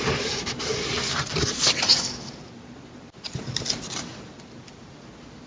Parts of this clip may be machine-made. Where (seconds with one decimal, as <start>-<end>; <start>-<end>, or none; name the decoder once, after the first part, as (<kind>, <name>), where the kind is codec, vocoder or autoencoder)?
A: none

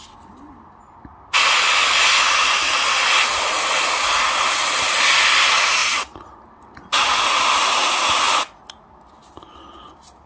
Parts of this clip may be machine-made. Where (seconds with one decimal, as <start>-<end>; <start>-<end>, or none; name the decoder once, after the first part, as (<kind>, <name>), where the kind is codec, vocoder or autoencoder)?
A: none